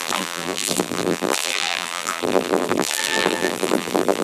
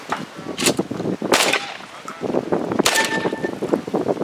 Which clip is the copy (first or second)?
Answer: first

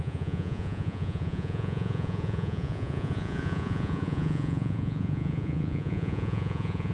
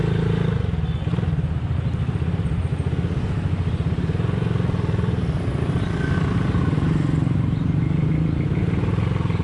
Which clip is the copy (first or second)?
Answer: first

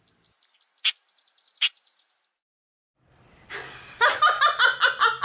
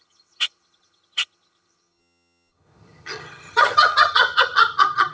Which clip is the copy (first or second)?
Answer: second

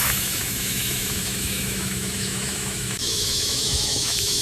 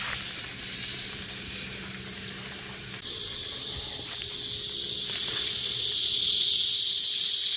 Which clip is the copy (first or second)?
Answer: first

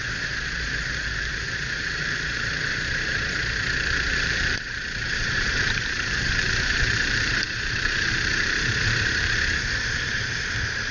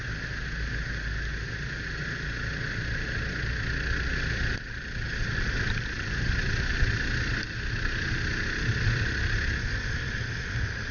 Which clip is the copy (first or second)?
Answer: first